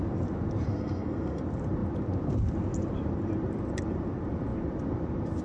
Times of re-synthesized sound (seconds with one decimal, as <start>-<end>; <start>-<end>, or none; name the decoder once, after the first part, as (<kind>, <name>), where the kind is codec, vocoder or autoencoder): 0.7-1.4 (codec, SNAC)